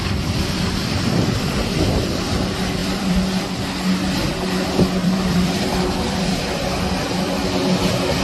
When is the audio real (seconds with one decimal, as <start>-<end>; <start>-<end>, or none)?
1.6-2.8; 3.4-5.0; 6.4-8.2